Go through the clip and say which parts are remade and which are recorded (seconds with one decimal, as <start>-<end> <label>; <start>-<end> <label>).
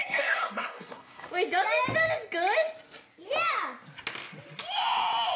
0.0-1.3 remade; 1.3-5.4 recorded